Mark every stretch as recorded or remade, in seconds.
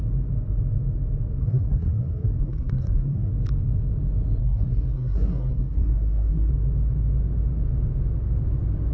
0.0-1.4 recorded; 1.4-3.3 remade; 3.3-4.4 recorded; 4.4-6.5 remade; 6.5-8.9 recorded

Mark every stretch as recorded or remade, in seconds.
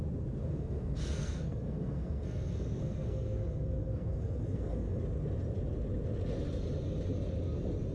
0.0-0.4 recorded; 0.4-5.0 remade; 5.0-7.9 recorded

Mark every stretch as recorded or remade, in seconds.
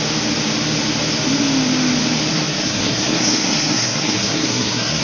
0.0-2.3 recorded; 2.3-5.0 remade